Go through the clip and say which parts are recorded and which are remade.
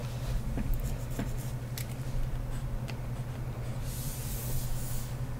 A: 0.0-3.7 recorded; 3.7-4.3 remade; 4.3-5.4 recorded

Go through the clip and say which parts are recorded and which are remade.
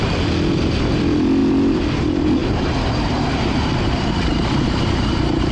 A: 0.0-2.4 recorded; 2.4-5.5 remade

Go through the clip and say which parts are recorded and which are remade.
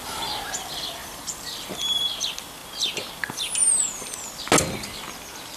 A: 0.0-1.0 recorded; 1.0-2.0 remade; 2.0-5.6 recorded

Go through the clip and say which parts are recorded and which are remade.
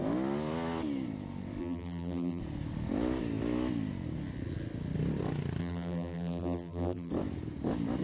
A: 0.0-1.6 recorded; 1.6-2.4 remade; 2.4-5.6 recorded; 5.6-7.1 remade; 7.1-8.0 recorded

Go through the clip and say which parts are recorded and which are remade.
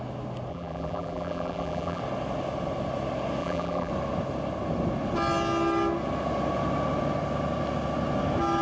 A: 0.0-0.5 recorded; 0.5-2.0 remade; 2.0-3.4 recorded; 3.4-3.9 remade; 3.9-8.6 recorded